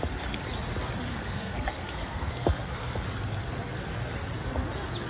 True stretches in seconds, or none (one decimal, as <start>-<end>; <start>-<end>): 0.0-1.1; 3.0-5.1